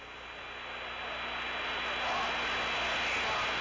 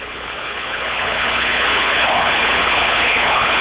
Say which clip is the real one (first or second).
first